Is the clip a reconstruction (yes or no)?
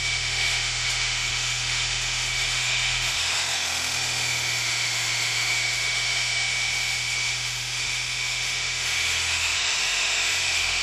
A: yes